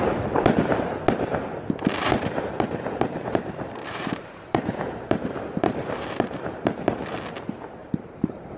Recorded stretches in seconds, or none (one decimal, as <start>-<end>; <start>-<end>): 0.0-2.0; 6.6-7.8

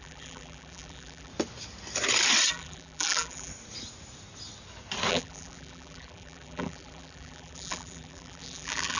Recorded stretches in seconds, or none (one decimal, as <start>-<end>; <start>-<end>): 1.3-2.5; 3.5-5.1

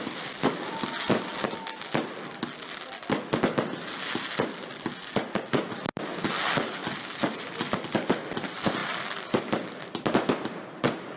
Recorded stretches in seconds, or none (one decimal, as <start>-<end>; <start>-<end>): 1.3-6.3; 6.8-8.3

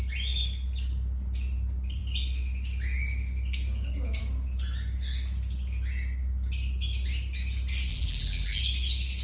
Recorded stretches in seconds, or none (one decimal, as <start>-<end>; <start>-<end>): 0.0-7.9; 8.6-9.2

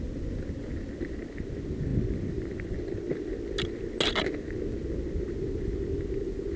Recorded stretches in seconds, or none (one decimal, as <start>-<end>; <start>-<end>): 0.0-6.6